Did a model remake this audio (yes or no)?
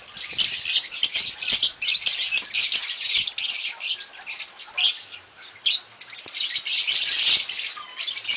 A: no